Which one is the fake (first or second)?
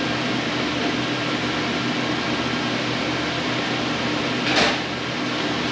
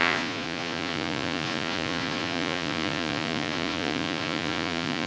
second